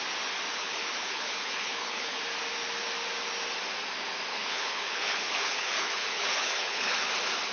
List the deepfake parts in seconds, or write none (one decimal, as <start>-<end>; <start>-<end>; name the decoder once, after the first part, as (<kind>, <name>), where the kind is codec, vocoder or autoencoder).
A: 0.5-2.2 (codec, HILCodec); 4.3-7.1

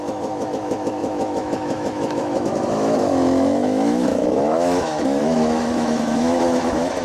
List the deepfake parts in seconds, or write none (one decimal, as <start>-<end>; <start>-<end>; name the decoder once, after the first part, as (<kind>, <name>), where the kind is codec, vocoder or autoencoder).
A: 0.0-7.0 (autoencoder, DAC-VAE)